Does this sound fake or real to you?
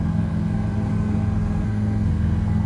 fake